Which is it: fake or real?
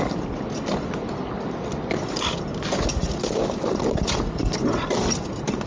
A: real